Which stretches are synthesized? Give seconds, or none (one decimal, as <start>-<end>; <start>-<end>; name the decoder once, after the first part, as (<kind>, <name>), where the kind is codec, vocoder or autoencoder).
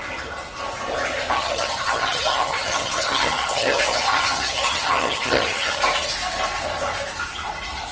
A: 1.3-5.8 (vocoder, HiFi-GAN)